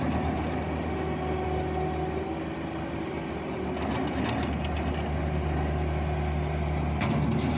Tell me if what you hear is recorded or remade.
recorded